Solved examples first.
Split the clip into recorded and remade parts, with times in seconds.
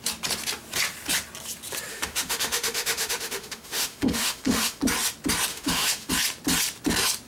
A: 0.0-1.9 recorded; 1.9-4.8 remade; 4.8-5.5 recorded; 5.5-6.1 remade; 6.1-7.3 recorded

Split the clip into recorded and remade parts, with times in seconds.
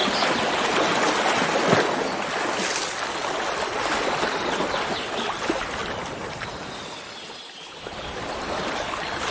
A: 0.0-9.3 recorded